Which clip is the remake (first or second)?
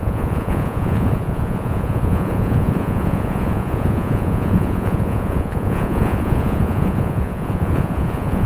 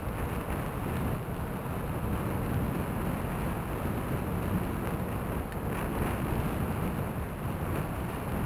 first